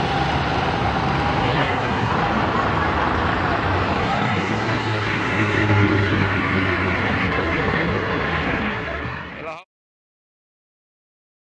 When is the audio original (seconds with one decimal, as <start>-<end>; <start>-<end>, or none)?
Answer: 0.0-1.4; 2.1-4.0; 9.3-11.4